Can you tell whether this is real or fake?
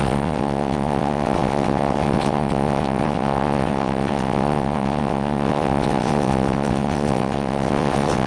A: fake